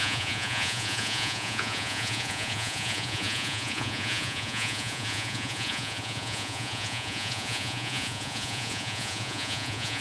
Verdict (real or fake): fake